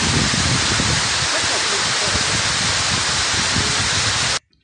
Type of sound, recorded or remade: recorded